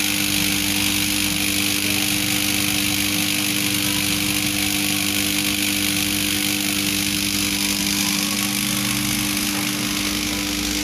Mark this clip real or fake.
real